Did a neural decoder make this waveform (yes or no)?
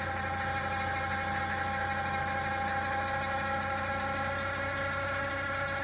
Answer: no